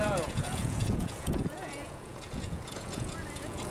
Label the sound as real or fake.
fake